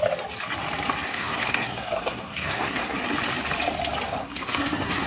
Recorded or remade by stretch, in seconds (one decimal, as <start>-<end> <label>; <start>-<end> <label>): 0.0-1.1 recorded; 1.1-3.0 remade; 3.0-4.2 recorded; 4.2-5.1 remade